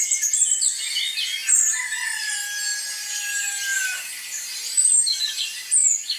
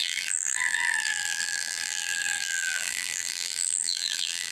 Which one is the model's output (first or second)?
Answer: second